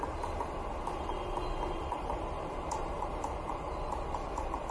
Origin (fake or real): real